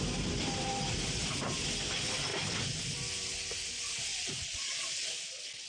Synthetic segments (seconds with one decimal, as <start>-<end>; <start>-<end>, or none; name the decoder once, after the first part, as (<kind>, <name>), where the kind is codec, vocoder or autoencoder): 4.1-5.1 (vocoder, Vocos)